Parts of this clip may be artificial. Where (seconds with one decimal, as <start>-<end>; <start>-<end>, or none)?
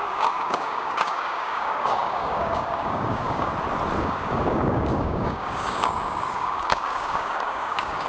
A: 0.0-3.5; 4.0-8.1